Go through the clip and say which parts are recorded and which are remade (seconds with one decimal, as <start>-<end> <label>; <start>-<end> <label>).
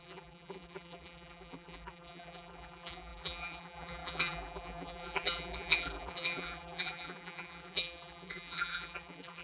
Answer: 0.0-9.4 remade